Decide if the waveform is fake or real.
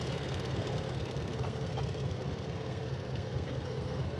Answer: fake